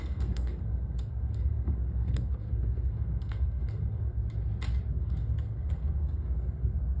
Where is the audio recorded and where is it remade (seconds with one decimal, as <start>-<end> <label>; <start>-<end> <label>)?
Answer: 0.0-4.2 remade; 4.2-4.9 recorded; 4.9-7.0 remade